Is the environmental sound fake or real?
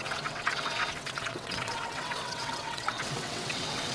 fake